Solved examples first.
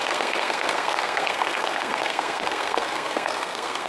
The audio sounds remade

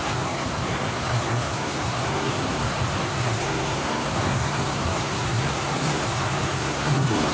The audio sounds remade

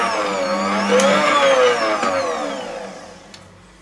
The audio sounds recorded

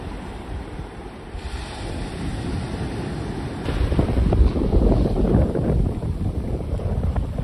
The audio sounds remade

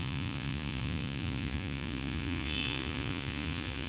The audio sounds remade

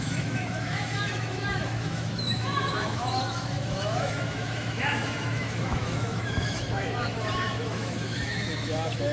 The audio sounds remade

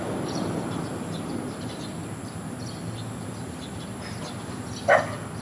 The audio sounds recorded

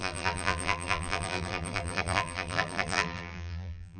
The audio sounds remade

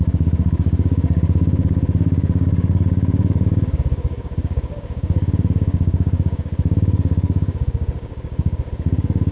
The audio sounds remade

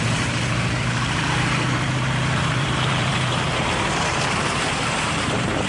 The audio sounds remade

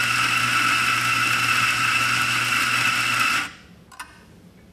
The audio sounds recorded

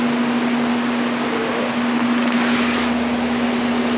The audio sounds recorded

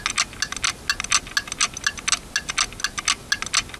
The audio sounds recorded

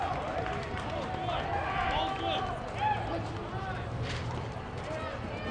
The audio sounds recorded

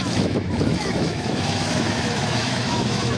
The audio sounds remade